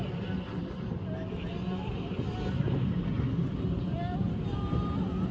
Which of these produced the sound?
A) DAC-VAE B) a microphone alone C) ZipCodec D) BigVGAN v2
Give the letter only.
B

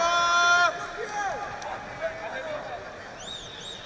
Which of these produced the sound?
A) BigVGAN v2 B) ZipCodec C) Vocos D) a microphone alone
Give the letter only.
D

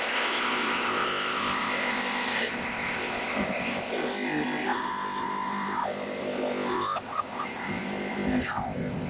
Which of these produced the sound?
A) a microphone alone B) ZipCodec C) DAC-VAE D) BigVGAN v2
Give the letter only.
B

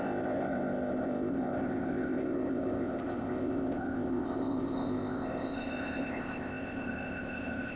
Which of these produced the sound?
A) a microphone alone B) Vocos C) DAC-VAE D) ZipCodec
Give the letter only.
D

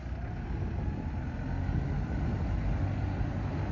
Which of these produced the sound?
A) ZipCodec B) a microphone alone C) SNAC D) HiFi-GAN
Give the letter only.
B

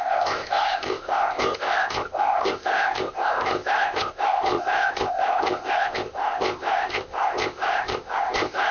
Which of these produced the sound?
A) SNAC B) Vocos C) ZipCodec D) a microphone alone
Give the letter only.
C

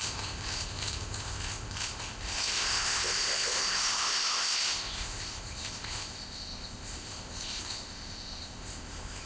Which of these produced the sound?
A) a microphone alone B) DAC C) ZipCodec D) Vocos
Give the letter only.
C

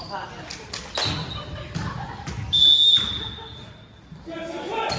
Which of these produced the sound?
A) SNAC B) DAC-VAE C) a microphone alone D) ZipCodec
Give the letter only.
C